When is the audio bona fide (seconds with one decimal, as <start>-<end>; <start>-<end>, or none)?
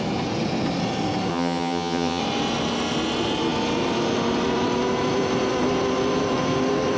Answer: 0.0-1.3; 2.2-7.0